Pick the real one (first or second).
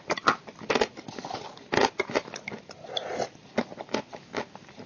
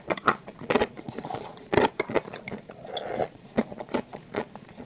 first